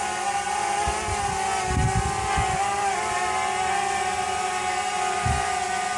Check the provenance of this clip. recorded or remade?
recorded